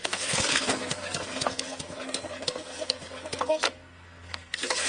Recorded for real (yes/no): no